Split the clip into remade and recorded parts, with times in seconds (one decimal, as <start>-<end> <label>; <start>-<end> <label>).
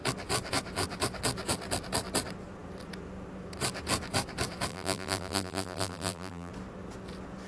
0.0-4.7 recorded; 4.7-6.5 remade; 6.5-7.5 recorded